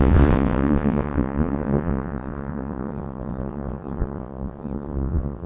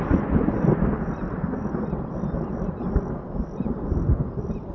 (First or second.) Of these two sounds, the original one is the second